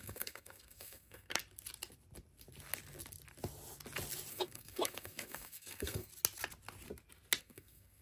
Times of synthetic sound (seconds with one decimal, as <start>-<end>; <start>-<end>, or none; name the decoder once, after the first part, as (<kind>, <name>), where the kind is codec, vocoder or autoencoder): 0.0-1.4 (codec, SNAC); 4.3-6.1; 7.4-8.0